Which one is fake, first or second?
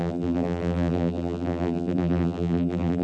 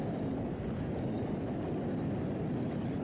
first